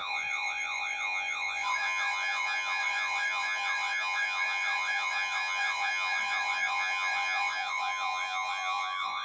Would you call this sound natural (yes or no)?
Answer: no